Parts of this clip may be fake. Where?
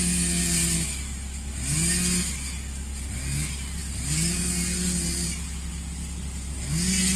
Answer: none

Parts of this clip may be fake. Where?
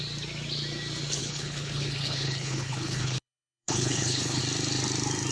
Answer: 1.2-4.4 (codec, HILCodec)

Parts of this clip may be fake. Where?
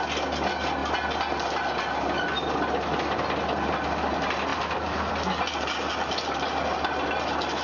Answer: 4.5-5.1 (vocoder, BigVGAN v2)